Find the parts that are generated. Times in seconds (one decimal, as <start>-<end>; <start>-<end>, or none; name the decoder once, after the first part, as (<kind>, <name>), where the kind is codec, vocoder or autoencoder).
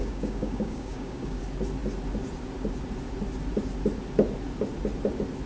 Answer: 0.0-1.4 (codec, DAC)